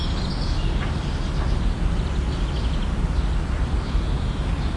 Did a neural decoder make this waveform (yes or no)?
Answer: no